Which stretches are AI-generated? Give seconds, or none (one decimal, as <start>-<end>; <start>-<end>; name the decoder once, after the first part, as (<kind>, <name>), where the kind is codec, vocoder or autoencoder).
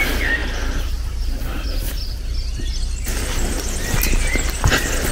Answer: none